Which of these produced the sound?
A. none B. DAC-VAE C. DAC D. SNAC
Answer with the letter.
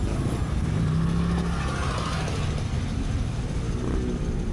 A